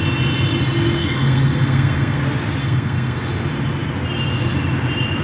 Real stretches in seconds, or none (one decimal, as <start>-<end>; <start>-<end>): 0.0-1.0; 2.2-2.6; 3.3-5.2